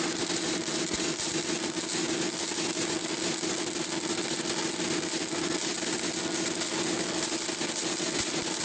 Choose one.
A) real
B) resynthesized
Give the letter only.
A